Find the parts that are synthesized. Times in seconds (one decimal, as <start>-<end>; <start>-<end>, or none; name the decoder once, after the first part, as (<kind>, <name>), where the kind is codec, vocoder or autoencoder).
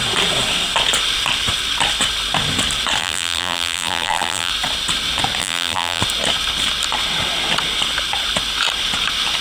3.0-4.5 (vocoder, BigVGAN v2); 5.4-6.0